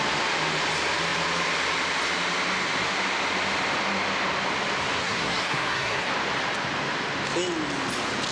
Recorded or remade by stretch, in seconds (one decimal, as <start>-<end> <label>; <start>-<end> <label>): 0.0-5.0 recorded; 5.0-6.1 remade; 6.1-8.3 recorded